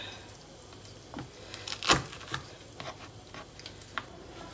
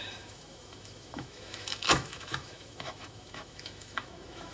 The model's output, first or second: second